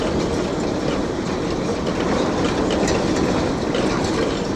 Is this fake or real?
real